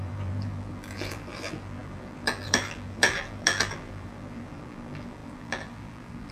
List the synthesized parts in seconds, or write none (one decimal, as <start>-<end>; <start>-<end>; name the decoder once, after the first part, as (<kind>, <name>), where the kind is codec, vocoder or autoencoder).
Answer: 0.0-6.3 (vocoder, BigVGAN v2)